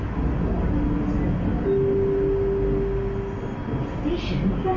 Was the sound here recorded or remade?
recorded